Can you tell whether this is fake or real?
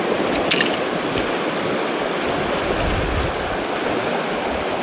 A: real